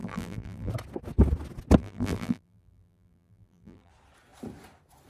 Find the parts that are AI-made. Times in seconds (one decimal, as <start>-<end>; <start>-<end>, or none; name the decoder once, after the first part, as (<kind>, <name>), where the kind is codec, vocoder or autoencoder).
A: 0.0-0.7 (vocoder, BigVGAN v2); 1.8-3.9